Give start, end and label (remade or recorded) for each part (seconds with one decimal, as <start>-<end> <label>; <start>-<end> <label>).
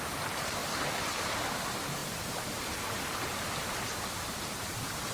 0.0-0.6 remade; 0.6-1.5 recorded; 1.5-5.1 remade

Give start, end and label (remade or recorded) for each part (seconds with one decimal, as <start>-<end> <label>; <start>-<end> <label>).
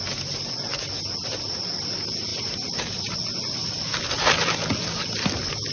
0.0-5.7 recorded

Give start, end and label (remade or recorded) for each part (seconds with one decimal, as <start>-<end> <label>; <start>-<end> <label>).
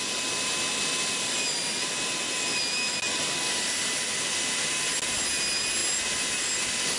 0.0-7.0 recorded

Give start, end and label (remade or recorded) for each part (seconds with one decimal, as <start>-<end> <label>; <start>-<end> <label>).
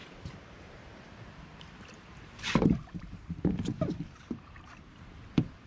0.0-5.7 remade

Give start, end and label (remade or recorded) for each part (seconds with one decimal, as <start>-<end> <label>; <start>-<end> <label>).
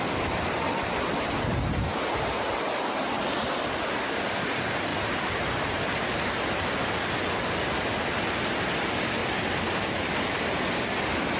0.0-4.9 recorded; 4.9-6.0 remade; 6.0-9.2 recorded; 9.2-10.1 remade; 10.1-11.4 recorded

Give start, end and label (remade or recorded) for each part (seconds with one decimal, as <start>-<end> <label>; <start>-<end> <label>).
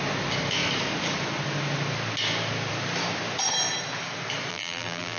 0.0-4.5 recorded; 4.5-5.2 remade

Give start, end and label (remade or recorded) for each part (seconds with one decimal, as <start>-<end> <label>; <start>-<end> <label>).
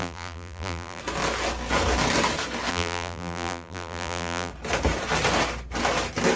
0.0-1.0 remade; 1.0-2.7 recorded; 2.7-4.5 remade; 4.5-6.4 recorded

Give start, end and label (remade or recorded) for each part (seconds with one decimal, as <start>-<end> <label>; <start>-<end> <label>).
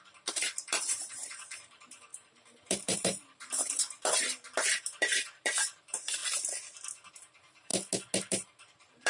0.0-6.2 remade; 6.2-7.1 recorded; 7.1-7.7 remade; 7.7-8.3 recorded; 8.3-9.1 remade